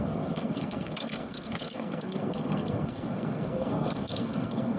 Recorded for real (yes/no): no